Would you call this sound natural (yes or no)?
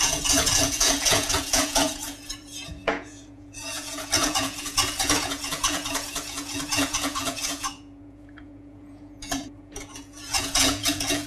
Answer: no